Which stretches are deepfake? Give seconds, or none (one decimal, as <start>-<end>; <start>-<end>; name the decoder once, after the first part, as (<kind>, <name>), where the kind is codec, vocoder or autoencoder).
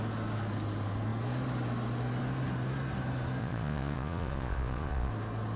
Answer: 3.4-5.1 (vocoder, Vocos)